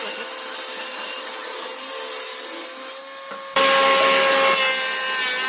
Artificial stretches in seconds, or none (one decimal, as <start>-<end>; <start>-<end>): none